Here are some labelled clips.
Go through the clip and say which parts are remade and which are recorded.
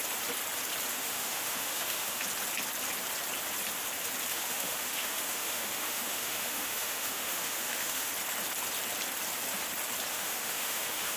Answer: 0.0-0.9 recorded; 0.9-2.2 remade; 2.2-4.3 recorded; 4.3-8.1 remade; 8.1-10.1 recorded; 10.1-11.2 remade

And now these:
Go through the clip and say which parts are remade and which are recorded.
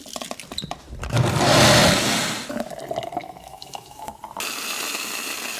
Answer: 0.0-3.2 recorded; 3.2-4.2 remade; 4.2-5.6 recorded